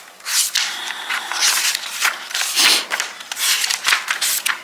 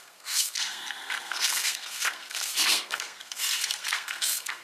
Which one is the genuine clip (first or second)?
first